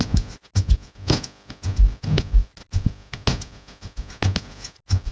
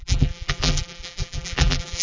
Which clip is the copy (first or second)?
second